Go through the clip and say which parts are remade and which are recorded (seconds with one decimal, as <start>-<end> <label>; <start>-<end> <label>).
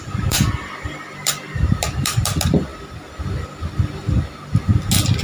0.0-2.7 remade; 2.7-5.2 recorded